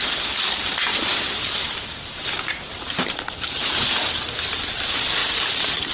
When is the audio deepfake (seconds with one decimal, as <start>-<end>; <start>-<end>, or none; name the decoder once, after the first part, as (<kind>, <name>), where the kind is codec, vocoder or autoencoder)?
0.9-4.1 (vocoder, BigVGAN v2); 5.2-5.9